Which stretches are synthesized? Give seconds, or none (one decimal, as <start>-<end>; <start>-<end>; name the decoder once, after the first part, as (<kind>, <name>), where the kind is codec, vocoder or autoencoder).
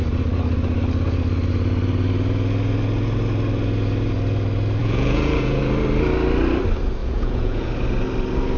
4.8-5.6 (vocoder, Vocos); 7.0-7.7